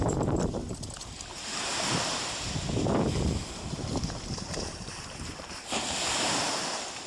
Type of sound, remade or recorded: remade